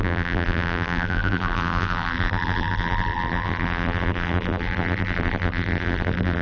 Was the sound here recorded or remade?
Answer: remade